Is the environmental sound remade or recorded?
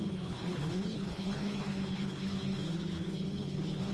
remade